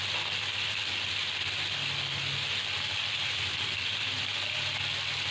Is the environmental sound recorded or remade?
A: recorded